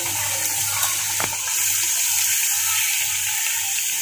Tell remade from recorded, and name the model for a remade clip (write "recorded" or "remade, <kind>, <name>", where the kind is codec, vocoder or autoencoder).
remade, vocoder, BigVGAN v2